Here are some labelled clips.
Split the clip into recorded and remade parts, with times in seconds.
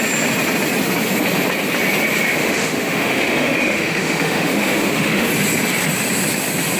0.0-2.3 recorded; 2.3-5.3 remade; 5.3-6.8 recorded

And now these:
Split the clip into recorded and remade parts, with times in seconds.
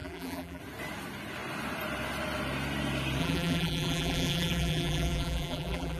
0.0-0.6 remade; 0.6-3.2 recorded; 3.2-6.0 remade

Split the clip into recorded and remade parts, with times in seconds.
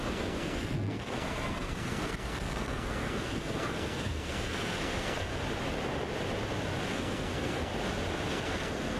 0.0-5.3 remade; 5.3-6.9 recorded; 6.9-7.7 remade; 7.7-8.3 recorded; 8.3-9.0 remade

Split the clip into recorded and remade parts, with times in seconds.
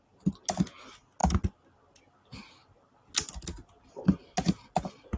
0.0-5.2 recorded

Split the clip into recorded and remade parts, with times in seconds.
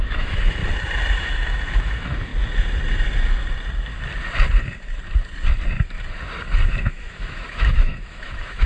0.0-0.6 remade; 0.6-1.1 recorded; 1.1-2.3 remade; 2.3-6.8 recorded; 6.8-8.7 remade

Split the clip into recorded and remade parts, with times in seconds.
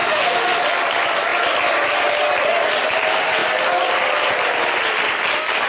0.0-0.6 remade; 0.6-5.7 recorded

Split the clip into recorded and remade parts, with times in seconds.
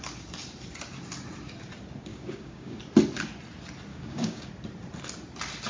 0.0-2.1 recorded; 2.1-2.8 remade; 2.8-3.9 recorded; 3.9-4.5 remade; 4.5-5.7 recorded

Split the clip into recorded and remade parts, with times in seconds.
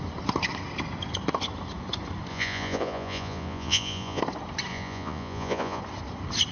0.0-2.3 recorded; 2.3-4.2 remade; 4.2-4.7 recorded; 4.7-5.8 remade; 5.8-6.5 recorded